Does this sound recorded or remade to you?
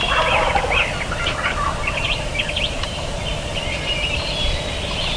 recorded